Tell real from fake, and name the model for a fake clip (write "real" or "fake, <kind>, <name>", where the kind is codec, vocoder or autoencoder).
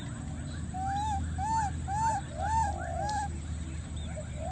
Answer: real